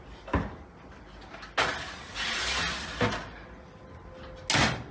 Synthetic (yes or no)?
no